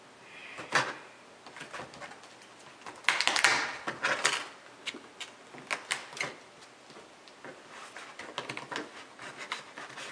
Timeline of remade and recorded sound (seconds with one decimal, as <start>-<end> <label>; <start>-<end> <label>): 0.0-10.1 recorded